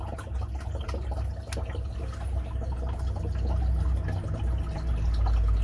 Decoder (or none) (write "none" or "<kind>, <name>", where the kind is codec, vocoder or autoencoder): none